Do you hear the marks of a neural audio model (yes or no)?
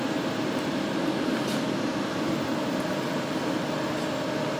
no